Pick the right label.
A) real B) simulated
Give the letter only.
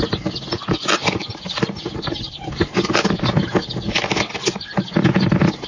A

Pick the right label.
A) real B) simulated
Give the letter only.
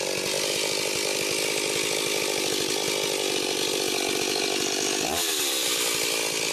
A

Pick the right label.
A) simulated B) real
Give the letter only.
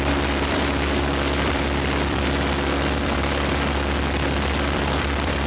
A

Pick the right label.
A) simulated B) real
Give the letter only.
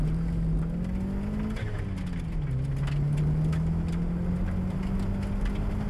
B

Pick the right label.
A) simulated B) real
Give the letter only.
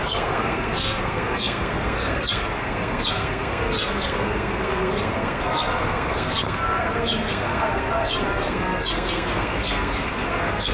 A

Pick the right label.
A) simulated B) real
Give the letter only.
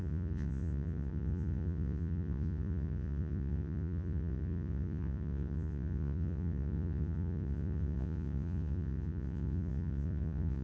A